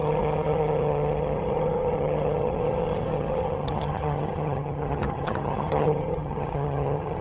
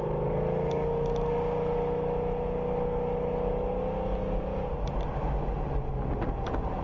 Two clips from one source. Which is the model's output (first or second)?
first